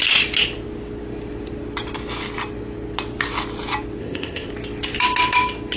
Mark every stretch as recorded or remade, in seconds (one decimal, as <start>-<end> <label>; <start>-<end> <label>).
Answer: 0.0-4.0 recorded; 4.0-4.5 remade; 4.5-5.8 recorded